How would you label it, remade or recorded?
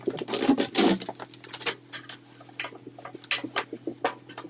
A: recorded